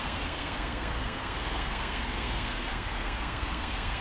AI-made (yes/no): yes